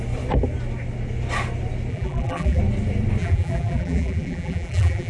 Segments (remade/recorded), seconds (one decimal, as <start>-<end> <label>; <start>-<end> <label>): 0.0-1.9 recorded; 1.9-2.6 remade; 2.6-3.2 recorded; 3.2-5.1 remade